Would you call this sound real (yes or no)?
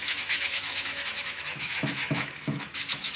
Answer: no